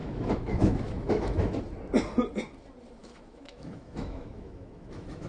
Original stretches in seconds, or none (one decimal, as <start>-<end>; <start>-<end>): 1.6-3.0